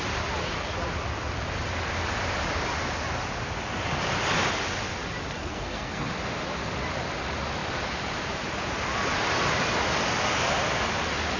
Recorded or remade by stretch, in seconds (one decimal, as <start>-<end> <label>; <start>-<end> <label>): 0.0-5.4 recorded; 5.4-6.1 remade; 6.1-11.4 recorded